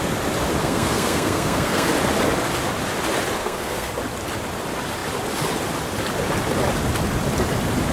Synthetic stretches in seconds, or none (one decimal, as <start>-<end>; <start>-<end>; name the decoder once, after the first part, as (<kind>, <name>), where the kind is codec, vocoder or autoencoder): 0.6-1.9 (codec, SNAC); 3.4-3.9